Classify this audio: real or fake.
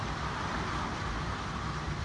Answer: real